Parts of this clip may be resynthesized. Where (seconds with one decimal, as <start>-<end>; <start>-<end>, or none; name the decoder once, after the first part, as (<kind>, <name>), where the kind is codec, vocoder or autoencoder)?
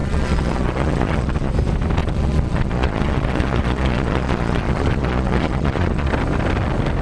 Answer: 0.0-1.5 (vocoder, Vocos); 2.0-6.1